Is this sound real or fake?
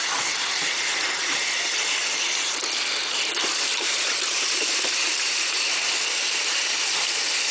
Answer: fake